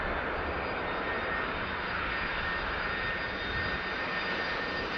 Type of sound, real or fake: real